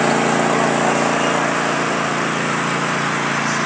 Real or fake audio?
real